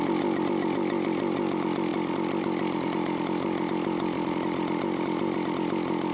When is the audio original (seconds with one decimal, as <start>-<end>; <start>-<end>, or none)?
0.0-6.1